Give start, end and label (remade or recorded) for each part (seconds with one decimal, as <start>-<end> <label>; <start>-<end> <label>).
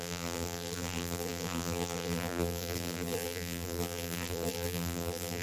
0.0-5.4 remade